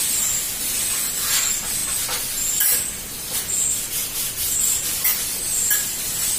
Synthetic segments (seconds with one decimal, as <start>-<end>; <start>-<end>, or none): none